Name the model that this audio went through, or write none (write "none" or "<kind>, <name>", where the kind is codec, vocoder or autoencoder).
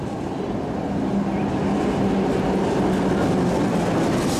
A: none